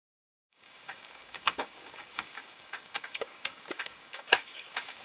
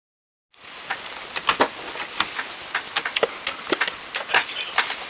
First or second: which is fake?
first